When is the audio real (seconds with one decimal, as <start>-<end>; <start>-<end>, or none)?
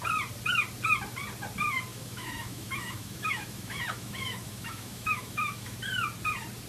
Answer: 0.0-1.9; 5.8-6.7